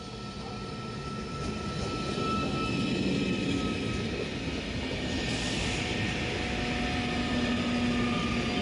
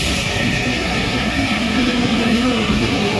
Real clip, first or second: first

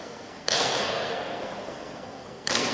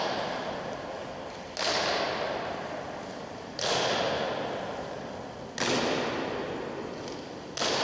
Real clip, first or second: second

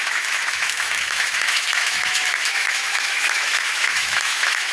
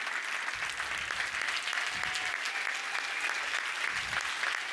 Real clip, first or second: second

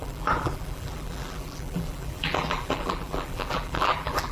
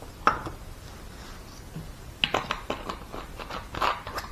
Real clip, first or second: second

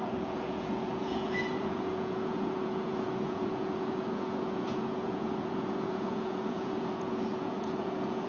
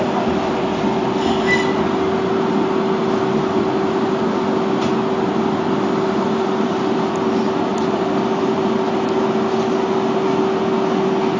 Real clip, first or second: second